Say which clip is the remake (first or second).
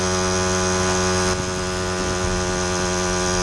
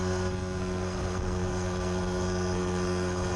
second